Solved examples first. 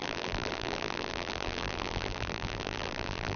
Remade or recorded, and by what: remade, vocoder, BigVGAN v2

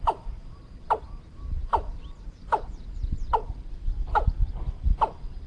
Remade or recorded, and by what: remade, vocoder, BigVGAN v2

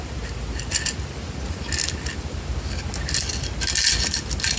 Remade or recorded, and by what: recorded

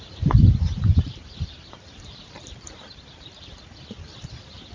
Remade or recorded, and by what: remade, vocoder, BigVGAN v2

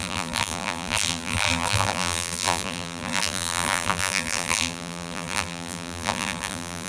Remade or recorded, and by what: remade, vocoder, BigVGAN v2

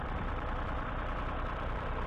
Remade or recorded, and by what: remade, vocoder, BigVGAN v2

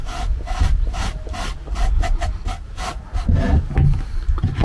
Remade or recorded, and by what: recorded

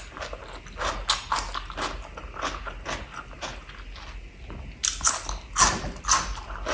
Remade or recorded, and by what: recorded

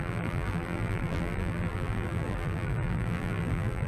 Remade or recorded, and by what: remade, vocoder, BigVGAN v2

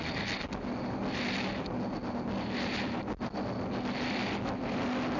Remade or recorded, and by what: recorded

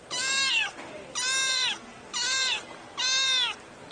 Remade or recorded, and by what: recorded